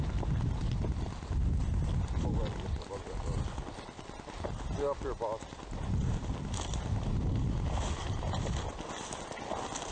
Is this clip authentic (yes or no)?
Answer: yes